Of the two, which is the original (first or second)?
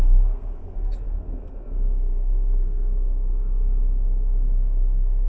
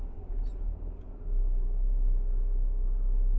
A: second